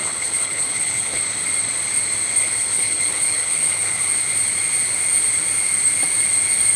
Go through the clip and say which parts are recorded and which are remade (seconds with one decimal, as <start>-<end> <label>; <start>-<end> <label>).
0.0-1.2 remade; 1.2-2.4 recorded; 2.4-4.1 remade; 4.1-6.8 recorded

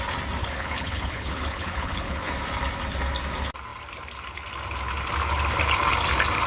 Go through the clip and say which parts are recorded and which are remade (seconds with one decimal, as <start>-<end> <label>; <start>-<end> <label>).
0.0-0.4 recorded; 0.4-2.3 remade; 2.3-6.5 recorded

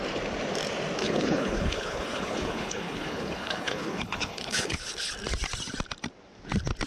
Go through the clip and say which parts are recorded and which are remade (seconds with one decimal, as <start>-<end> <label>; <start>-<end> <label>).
0.0-1.0 recorded; 1.0-5.1 remade; 5.1-6.9 recorded

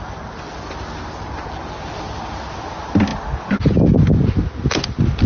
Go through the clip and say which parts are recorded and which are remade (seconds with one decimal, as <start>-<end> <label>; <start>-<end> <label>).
0.0-5.3 recorded